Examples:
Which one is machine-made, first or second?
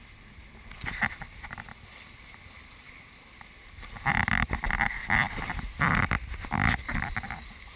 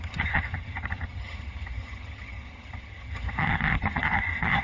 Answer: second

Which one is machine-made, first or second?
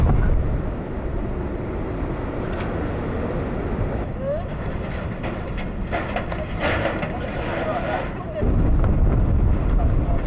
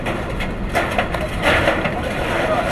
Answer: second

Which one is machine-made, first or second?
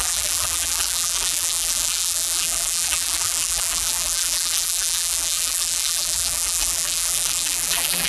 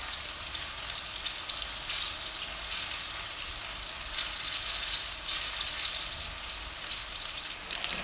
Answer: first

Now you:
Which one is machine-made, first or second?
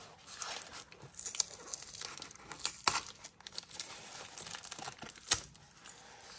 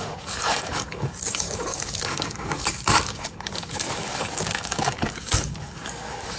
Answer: second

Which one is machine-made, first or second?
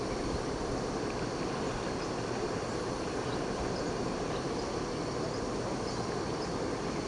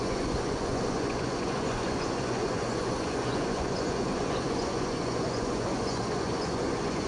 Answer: second